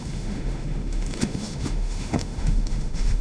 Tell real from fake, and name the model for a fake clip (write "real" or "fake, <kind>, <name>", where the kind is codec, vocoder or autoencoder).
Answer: fake, autoencoder, DAC-VAE